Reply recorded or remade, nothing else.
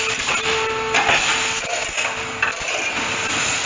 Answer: recorded